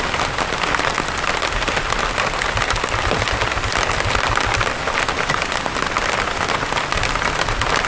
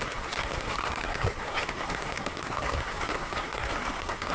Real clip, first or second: first